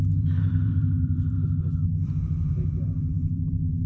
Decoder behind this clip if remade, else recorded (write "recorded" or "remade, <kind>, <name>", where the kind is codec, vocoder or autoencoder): remade, vocoder, BigVGAN v2